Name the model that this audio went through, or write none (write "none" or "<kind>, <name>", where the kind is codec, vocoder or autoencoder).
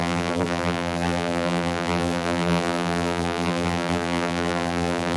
vocoder, BigVGAN v2